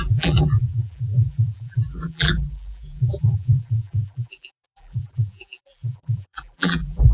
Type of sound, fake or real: fake